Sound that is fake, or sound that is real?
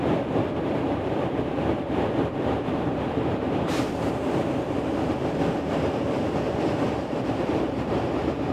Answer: fake